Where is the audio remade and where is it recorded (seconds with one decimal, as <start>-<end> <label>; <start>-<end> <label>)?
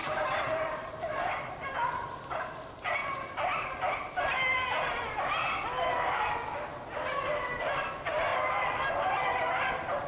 0.0-1.3 remade; 1.3-3.0 recorded; 3.0-5.2 remade; 5.2-10.1 recorded